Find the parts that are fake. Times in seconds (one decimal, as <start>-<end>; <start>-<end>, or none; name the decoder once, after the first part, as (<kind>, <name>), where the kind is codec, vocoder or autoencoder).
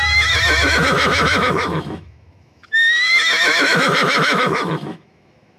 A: 0.0-5.6 (autoencoder, DAC-VAE)